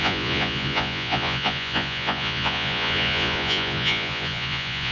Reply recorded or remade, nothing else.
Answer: remade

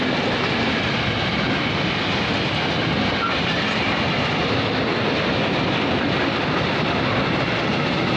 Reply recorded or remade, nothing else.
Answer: recorded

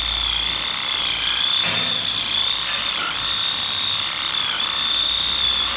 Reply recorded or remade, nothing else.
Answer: recorded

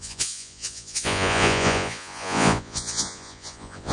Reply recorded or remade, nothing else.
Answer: remade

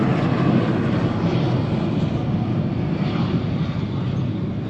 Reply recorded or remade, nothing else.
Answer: recorded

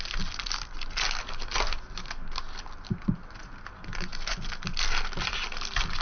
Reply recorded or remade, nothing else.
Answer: recorded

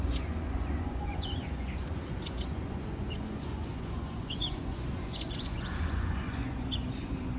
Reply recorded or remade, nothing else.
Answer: remade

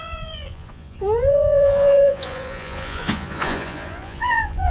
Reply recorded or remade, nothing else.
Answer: remade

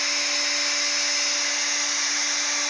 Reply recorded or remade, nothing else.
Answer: recorded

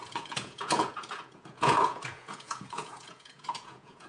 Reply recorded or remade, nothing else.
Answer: remade